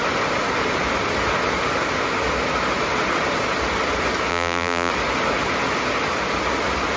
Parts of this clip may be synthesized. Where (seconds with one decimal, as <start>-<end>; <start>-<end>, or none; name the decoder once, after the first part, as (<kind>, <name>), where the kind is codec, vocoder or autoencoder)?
4.3-4.9 (vocoder, BigVGAN v2)